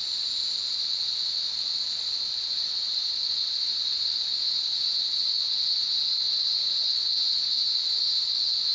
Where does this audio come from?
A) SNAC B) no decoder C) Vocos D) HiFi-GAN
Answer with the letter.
B